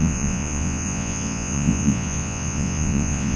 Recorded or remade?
remade